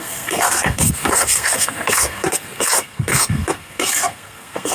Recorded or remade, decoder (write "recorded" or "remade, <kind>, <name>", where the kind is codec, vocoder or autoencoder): remade, codec, SNAC